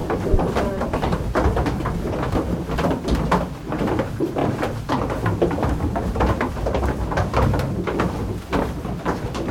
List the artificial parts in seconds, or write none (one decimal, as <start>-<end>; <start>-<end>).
none